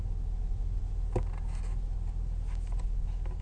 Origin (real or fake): real